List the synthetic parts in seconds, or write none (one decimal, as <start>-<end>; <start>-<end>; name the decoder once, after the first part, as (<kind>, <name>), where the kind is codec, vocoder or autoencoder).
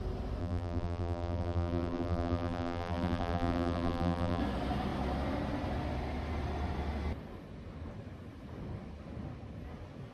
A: 0.4-4.4 (vocoder, BigVGAN v2)